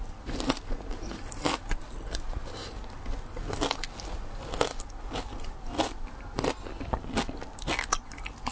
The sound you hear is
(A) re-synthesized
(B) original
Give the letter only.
B